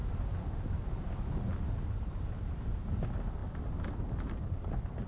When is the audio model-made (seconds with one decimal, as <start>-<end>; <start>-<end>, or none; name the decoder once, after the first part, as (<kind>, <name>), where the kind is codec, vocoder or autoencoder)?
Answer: none